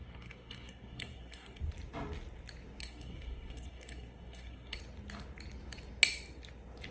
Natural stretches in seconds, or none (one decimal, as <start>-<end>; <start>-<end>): 1.6-2.8; 4.8-6.9